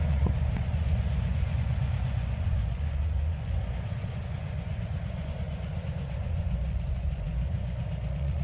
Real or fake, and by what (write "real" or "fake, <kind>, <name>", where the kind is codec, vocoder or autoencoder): fake, vocoder, Vocos